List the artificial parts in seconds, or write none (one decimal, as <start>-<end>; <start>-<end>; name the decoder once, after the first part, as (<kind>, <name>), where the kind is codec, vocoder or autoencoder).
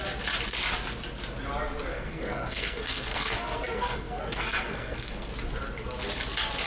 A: 1.9-5.3 (codec, SNAC)